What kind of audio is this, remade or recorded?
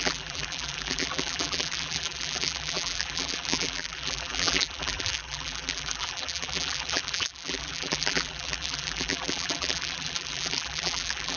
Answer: remade